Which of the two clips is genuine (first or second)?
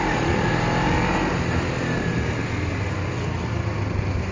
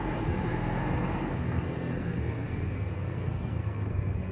first